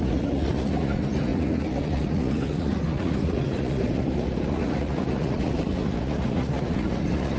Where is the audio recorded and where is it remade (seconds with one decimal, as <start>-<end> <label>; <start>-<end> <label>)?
0.0-7.4 remade